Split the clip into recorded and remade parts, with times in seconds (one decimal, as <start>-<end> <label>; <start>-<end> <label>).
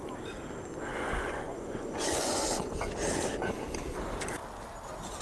0.0-0.9 recorded; 0.9-2.9 remade; 2.9-5.2 recorded